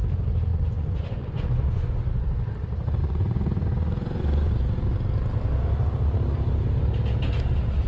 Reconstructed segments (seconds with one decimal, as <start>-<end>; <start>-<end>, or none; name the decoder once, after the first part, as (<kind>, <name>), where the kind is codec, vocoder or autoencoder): 0.5-1.9 (vocoder, Vocos); 3.0-4.5